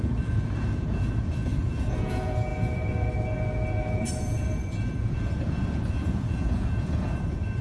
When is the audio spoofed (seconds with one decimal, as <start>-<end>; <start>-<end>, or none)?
0.0-7.6